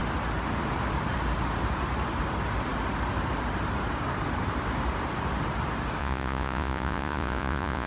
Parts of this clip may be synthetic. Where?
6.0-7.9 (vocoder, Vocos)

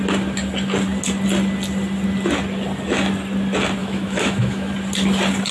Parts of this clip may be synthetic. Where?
3.8-4.7 (autoencoder, DAC-VAE)

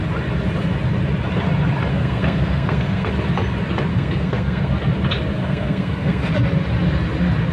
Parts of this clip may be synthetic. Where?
1.9-3.1 (codec, SNAC); 3.9-4.7; 5.3-6.3

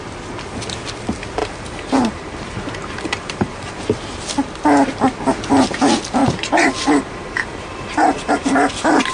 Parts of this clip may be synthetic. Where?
1.4-3.8 (vocoder, BigVGAN v2); 6.2-9.1

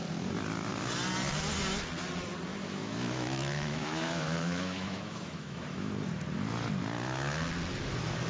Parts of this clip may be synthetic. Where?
2.5-5.9 (autoencoder, DAC-VAE)

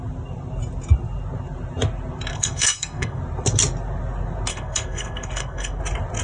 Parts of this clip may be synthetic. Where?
2.3-3.2 (codec, SNAC); 4.5-5.8

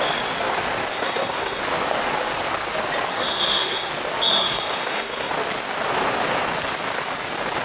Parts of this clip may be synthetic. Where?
0.9-1.6 (codec, SNAC); 3.1-3.9; 4.3-5.3